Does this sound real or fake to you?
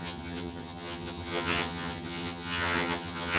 fake